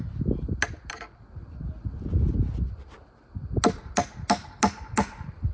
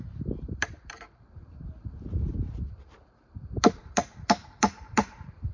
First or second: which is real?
first